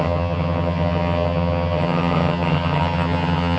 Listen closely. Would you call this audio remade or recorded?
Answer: remade